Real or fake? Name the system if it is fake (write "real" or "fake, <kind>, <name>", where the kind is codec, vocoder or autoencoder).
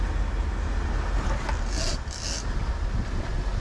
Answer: real